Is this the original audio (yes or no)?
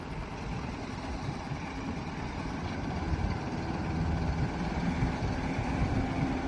no